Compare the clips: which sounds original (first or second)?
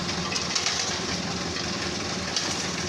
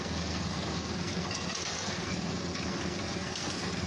first